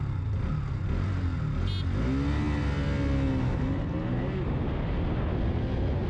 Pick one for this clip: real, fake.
real